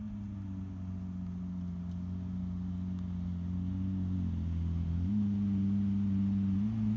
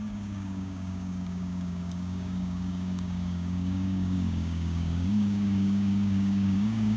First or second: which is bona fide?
first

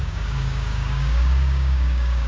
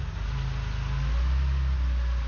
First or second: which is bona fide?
second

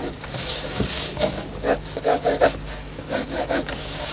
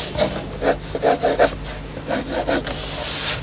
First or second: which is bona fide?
second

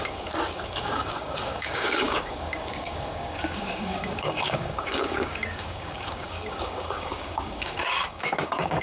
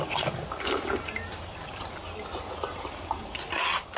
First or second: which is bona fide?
second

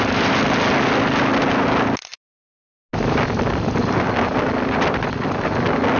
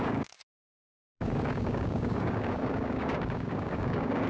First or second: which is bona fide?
first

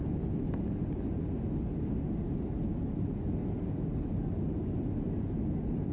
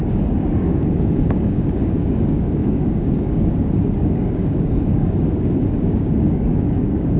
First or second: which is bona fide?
first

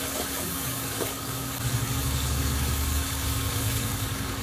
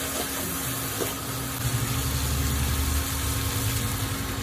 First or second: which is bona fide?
second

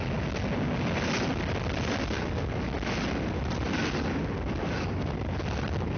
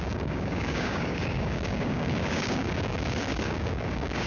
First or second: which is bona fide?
first